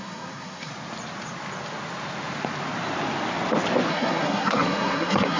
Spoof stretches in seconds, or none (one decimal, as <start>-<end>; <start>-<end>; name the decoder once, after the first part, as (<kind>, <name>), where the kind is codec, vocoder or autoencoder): 0.0-0.7 (codec, SNAC); 3.9-5.4